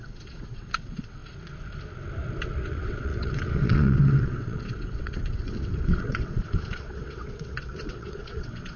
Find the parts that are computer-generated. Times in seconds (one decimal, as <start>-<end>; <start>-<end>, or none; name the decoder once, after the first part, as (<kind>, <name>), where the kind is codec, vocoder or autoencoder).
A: 0.0-1.2 (vocoder, WaveNeXt); 2.7-8.8